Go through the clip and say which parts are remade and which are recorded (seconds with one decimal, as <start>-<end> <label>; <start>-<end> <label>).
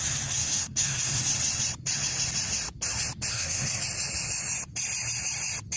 0.0-0.4 recorded; 0.4-1.2 remade; 1.2-3.3 recorded; 3.3-3.8 remade; 3.8-5.8 recorded